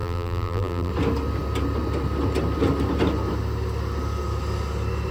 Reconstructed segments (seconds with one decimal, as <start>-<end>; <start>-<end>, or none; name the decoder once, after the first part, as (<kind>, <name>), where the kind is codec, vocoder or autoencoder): 0.0-0.9 (vocoder, BigVGAN v2)